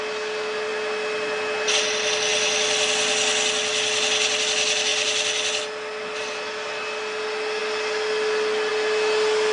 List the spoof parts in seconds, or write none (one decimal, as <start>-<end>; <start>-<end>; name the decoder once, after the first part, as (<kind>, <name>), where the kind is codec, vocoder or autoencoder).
none